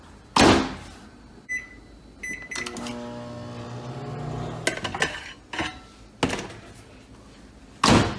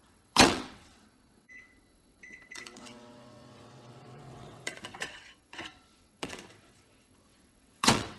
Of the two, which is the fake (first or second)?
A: second